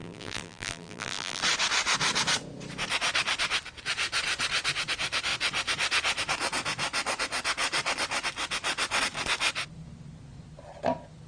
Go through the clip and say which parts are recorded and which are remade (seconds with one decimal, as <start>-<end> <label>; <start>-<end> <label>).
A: 0.0-1.4 remade; 1.4-11.3 recorded